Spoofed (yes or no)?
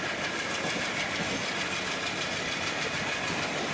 no